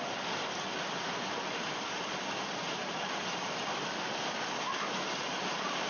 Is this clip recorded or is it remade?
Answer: recorded